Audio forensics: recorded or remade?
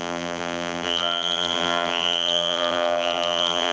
remade